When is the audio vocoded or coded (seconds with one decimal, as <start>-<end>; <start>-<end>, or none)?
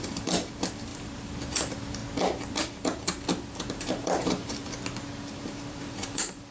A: 0.0-2.0; 3.6-4.6; 5.3-6.5